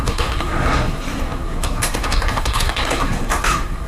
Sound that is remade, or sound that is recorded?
remade